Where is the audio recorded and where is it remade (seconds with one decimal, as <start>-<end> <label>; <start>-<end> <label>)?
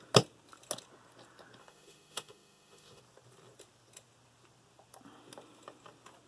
0.0-1.6 recorded; 1.6-3.0 remade; 3.0-6.3 recorded